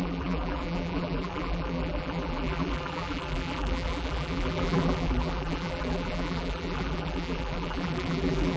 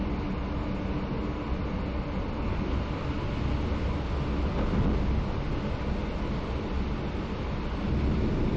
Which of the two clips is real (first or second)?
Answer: second